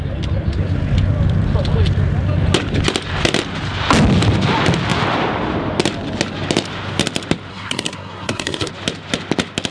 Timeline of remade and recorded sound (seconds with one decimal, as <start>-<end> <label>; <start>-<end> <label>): 0.0-7.5 recorded; 7.5-8.7 remade; 8.7-9.7 recorded